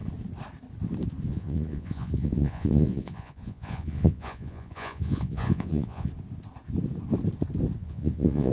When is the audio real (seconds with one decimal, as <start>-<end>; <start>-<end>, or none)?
0.0-1.3; 6.1-7.8